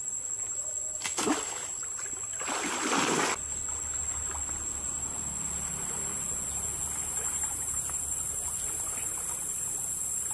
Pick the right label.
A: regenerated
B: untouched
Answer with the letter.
B